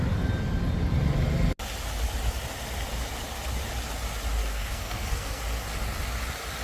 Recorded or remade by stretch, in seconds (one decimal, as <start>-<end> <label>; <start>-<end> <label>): 0.0-4.4 recorded; 4.4-5.4 remade; 5.4-6.6 recorded